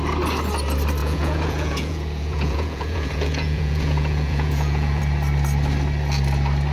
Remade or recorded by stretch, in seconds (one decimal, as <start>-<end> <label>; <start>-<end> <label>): 0.0-1.0 recorded; 1.0-5.0 remade; 5.0-6.7 recorded